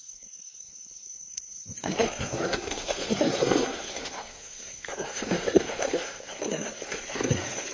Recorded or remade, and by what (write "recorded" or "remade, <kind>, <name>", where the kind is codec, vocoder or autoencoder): remade, codec, SNAC